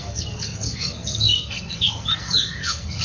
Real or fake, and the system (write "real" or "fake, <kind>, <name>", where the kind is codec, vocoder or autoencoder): fake, codec, SNAC